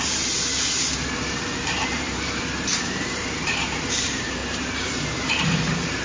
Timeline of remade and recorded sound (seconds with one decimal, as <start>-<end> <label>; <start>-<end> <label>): 0.0-6.0 remade

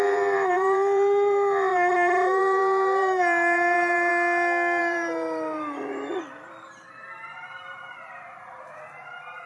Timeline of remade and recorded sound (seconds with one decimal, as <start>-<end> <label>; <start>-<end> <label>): 0.0-4.1 remade; 4.1-4.8 recorded; 4.8-9.5 remade

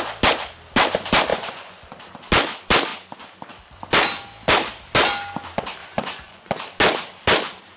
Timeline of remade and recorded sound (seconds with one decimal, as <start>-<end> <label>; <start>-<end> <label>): 0.0-1.3 recorded; 1.3-1.9 remade; 1.9-5.8 recorded; 5.8-6.5 remade; 6.5-7.8 recorded

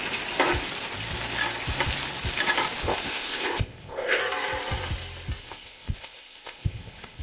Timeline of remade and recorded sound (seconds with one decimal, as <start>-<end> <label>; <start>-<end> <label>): 0.0-2.8 recorded; 2.8-4.2 remade; 4.2-5.4 recorded; 5.4-7.2 remade

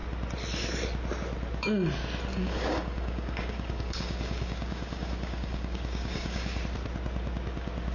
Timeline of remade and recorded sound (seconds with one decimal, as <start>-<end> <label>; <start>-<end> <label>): 0.0-2.3 recorded; 2.3-6.6 remade; 6.6-7.9 recorded

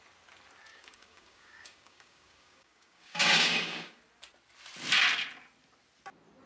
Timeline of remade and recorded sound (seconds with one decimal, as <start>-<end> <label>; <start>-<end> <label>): 0.0-0.7 recorded; 0.7-4.0 remade; 4.0-6.5 recorded

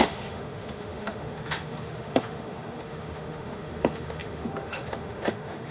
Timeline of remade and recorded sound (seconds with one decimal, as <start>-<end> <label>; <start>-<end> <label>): 0.0-5.7 remade